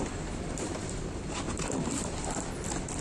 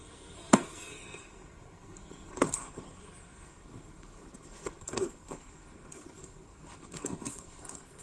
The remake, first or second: second